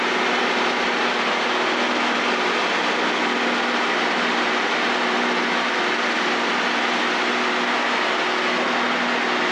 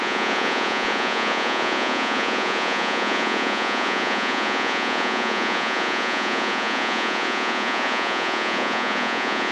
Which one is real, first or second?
first